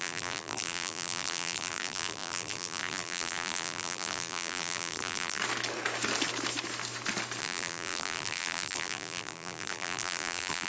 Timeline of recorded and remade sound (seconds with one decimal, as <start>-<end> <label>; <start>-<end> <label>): 0.0-5.4 remade; 5.4-7.4 recorded; 7.4-10.7 remade

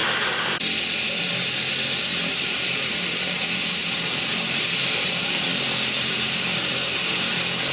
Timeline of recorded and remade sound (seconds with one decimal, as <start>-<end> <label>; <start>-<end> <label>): 0.0-2.3 recorded; 2.3-7.7 remade

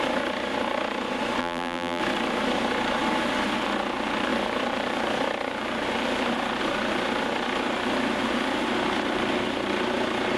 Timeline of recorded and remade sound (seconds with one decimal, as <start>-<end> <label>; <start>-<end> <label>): 0.0-1.4 recorded; 1.4-2.0 remade; 2.0-10.4 recorded

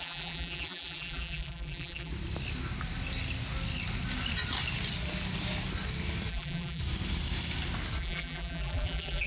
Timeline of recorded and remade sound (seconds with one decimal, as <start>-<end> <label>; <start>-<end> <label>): 0.0-2.1 remade; 2.1-6.3 recorded; 6.3-6.8 remade; 6.8-8.0 recorded; 8.0-9.3 remade

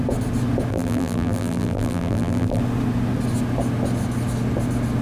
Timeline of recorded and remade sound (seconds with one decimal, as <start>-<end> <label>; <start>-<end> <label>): 0.0-0.7 recorded; 0.7-2.6 remade; 2.6-5.0 recorded

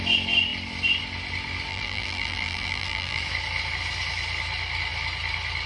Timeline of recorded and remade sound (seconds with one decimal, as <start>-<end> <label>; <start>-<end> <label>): 0.0-1.7 recorded; 1.7-3.2 remade; 3.2-5.7 recorded

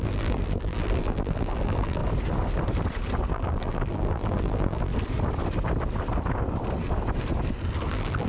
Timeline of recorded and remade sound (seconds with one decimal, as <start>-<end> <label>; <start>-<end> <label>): 0.0-2.0 remade; 2.0-3.3 recorded; 3.3-4.9 remade; 4.9-7.9 recorded; 7.9-8.3 remade

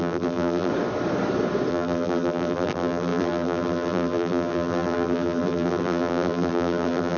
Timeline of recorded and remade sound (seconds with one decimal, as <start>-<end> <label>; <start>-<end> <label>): 0.0-0.7 remade; 0.7-1.7 recorded; 1.7-7.2 remade